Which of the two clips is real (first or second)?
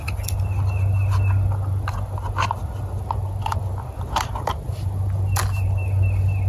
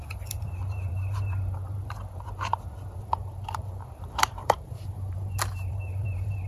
first